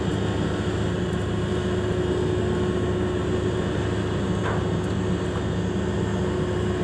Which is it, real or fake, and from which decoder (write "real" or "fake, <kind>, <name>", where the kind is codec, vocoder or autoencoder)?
real